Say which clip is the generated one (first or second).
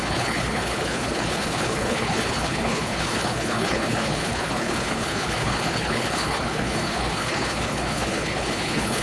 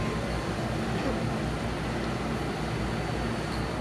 first